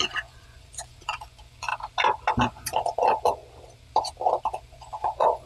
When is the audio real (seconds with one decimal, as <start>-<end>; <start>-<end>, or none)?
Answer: 1.7-2.3; 3.4-4.5